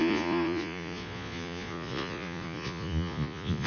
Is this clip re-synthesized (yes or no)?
yes